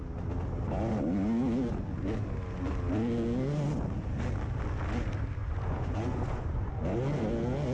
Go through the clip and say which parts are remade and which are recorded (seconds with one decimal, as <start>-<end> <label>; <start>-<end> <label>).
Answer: 0.0-5.4 recorded; 5.4-6.7 remade; 6.7-7.7 recorded